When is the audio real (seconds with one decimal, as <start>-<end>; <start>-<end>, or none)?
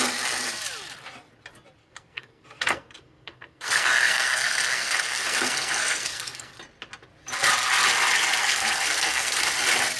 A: 0.0-1.8; 6.5-8.4; 9.4-10.0